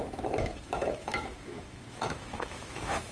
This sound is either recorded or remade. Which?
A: remade